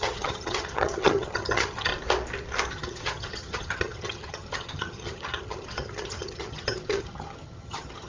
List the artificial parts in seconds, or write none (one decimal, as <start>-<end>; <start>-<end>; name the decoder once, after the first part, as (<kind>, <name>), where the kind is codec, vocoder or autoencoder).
0.0-1.9 (vocoder, HiFi-GAN); 2.7-8.1